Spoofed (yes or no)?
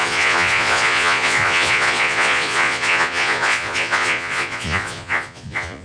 yes